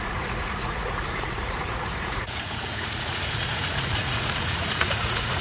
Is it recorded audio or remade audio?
remade